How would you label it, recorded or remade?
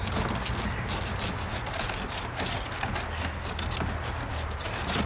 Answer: recorded